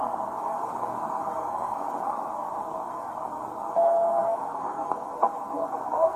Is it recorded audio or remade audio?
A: remade